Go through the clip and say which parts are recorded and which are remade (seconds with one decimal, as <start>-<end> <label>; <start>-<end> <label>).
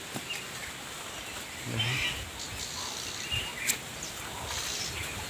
0.0-5.3 recorded